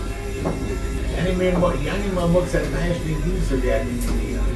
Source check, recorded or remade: recorded